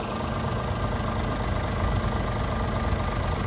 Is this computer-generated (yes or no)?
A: no